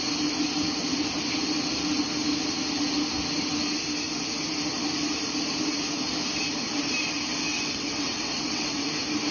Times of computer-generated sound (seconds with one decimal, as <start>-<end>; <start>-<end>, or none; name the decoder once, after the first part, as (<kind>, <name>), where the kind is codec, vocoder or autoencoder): 7.5-8.8 (vocoder, WaveNeXt)